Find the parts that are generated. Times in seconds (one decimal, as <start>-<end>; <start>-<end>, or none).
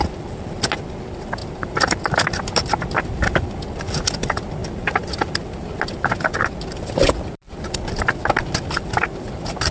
1.4-3.4